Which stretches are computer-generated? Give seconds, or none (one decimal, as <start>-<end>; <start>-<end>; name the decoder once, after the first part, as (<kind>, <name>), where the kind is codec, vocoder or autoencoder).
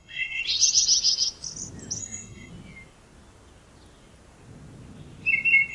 0.0-0.4 (codec, SNAC); 2.0-2.5